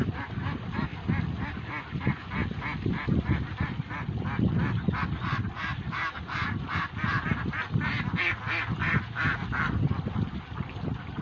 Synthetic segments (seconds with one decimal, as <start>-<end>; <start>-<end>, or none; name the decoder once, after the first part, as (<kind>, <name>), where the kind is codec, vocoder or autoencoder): none

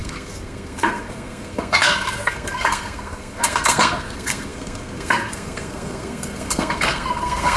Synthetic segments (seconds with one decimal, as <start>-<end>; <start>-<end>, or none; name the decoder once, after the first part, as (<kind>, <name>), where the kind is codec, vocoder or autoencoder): 0.0-7.6 (codec, SNAC)

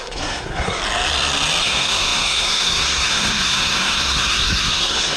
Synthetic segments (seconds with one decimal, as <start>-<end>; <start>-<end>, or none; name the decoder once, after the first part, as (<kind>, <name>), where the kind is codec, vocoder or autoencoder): 0.0-0.8 (codec, SNAC); 1.6-5.2

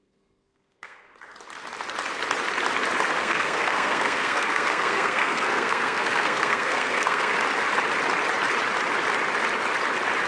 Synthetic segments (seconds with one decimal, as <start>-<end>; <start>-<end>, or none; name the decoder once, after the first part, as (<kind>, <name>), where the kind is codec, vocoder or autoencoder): 0.0-1.1 (codec, SNAC); 3.2-7.3

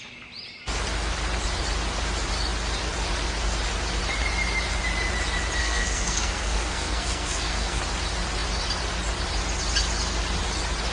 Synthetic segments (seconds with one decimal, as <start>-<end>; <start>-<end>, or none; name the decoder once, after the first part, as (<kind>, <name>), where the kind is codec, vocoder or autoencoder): 5.6-7.8 (codec, SNAC)

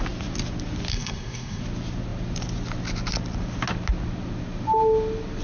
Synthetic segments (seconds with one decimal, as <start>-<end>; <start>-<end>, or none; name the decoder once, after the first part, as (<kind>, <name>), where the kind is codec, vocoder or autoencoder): 0.9-1.6 (codec, SNAC)

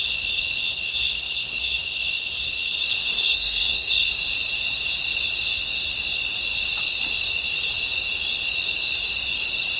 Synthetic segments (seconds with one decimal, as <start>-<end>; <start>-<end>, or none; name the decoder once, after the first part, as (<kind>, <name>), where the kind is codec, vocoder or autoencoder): 0.7-2.5 (codec, SNAC); 3.0-4.1